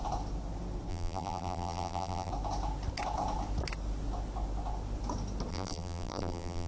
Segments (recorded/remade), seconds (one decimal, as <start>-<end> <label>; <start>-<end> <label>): 0.0-0.9 recorded; 0.9-2.3 remade; 2.3-5.5 recorded; 5.5-6.7 remade